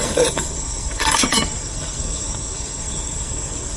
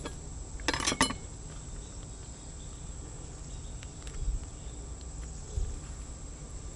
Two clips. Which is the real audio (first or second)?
second